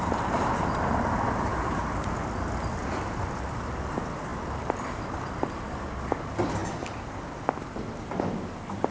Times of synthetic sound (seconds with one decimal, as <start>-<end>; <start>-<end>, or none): none